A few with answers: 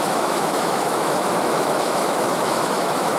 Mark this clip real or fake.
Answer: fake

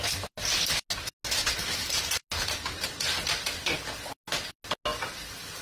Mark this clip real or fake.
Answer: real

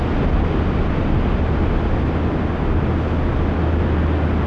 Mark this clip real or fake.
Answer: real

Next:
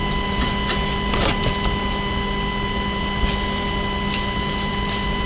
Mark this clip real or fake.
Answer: real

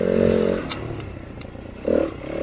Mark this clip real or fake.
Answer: real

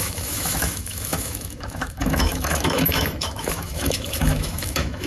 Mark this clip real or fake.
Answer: fake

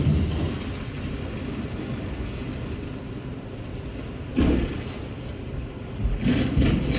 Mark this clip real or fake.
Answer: real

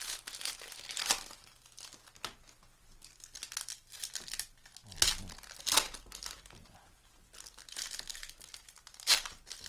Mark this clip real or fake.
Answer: real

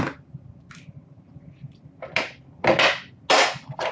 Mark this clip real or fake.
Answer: real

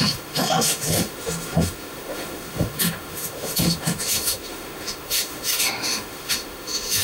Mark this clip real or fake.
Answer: fake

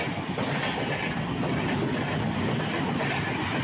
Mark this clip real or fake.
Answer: real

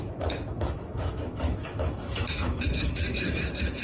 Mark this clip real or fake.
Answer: fake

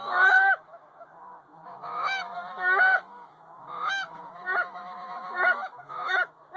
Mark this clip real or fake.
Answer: fake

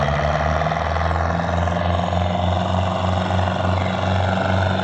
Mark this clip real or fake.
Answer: real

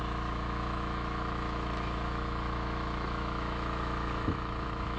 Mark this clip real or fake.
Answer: fake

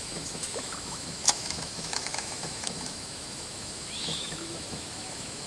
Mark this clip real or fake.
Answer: fake